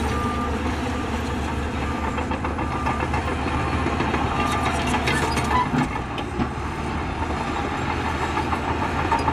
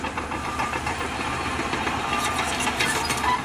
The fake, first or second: second